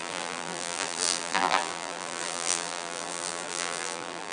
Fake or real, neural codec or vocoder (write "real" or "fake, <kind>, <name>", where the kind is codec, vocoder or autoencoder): fake, vocoder, BigVGAN v2